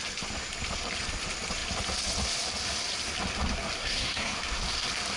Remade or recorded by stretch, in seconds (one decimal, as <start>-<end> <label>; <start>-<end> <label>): 0.0-3.8 recorded; 3.8-4.4 remade; 4.4-5.2 recorded